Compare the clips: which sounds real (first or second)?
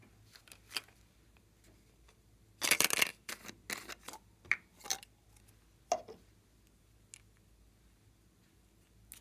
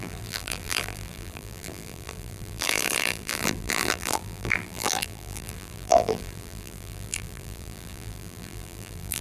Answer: first